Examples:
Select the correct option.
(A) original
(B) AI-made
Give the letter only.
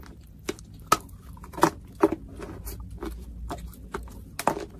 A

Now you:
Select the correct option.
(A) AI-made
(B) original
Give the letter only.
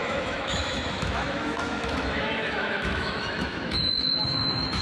A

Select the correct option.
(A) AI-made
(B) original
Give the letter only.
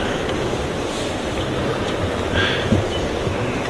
B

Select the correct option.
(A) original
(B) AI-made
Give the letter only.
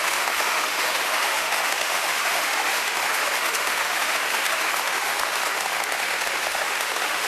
B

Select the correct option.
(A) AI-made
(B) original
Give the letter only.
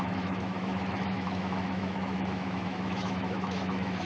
A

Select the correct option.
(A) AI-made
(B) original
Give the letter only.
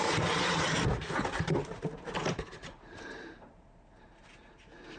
B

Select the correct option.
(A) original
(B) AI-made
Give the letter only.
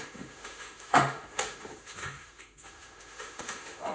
B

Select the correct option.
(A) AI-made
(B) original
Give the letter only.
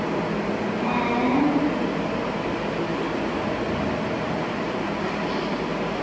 B